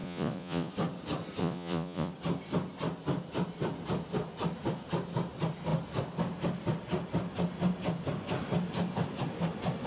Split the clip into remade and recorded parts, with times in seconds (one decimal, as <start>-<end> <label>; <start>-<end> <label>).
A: 0.0-0.7 remade; 0.7-1.4 recorded; 1.4-2.1 remade; 2.1-9.9 recorded